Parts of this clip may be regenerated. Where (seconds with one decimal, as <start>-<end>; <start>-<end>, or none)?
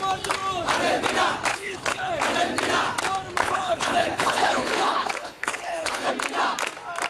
1.5-2.1; 3.4-6.1